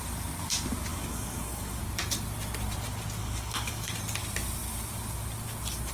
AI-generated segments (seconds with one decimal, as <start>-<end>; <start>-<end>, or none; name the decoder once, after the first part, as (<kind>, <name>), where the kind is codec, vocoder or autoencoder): 0.9-1.8 (codec, DAC); 3.2-3.9